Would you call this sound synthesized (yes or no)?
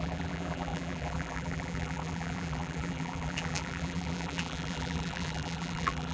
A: yes